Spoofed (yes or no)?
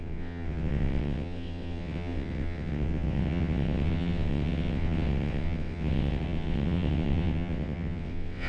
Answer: yes